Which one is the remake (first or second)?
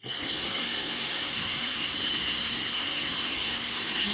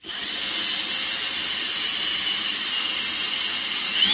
first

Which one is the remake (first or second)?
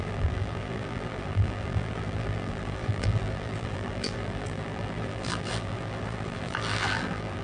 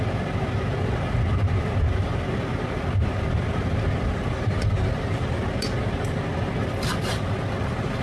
first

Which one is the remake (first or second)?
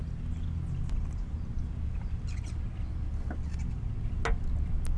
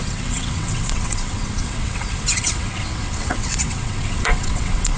second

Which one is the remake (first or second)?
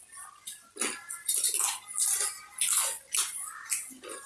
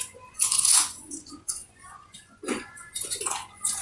second